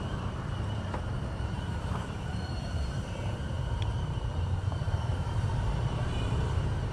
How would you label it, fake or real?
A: fake